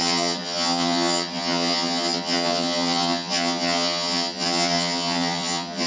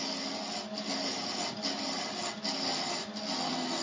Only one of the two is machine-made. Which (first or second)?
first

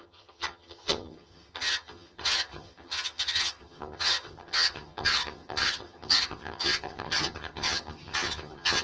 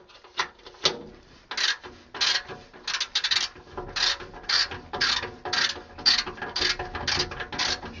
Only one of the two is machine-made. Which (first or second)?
first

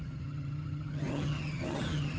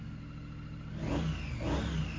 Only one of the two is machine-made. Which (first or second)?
first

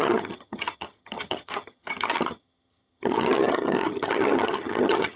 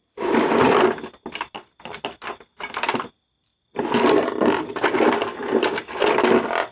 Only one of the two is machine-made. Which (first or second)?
first